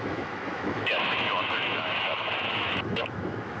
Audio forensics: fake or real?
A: fake